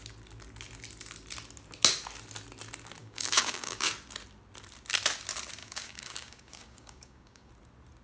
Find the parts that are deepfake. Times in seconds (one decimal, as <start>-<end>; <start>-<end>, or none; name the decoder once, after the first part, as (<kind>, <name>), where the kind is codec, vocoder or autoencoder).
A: 3.0-3.9 (codec, DAC); 5.6-7.5